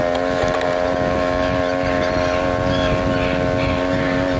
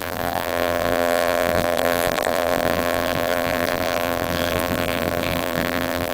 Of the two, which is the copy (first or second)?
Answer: second